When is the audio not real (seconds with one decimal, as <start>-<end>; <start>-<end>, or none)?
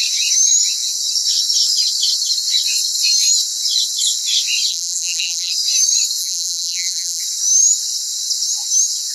4.7-5.5; 6.2-7.2